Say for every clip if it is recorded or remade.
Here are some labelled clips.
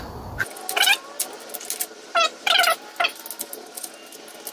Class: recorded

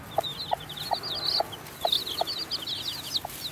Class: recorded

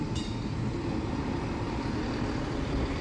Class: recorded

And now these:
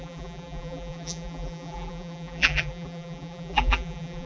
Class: remade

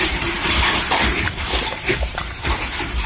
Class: remade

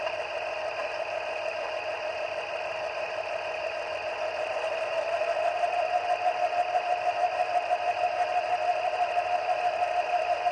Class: remade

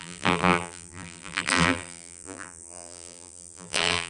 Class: remade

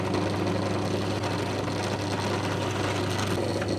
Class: recorded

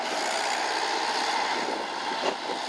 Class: recorded